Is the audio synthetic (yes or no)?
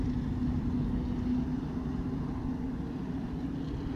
no